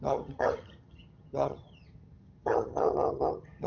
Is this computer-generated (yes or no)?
yes